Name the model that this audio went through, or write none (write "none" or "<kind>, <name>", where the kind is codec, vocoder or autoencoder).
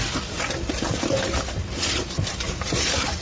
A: vocoder, BigVGAN v2